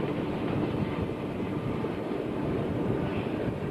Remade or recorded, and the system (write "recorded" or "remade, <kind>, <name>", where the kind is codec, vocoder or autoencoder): remade, vocoder, BigVGAN v2